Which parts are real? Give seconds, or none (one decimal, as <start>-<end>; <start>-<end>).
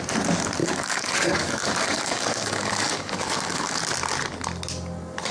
0.0-0.6; 3.8-5.3